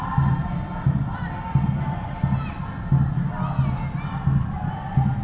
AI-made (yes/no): no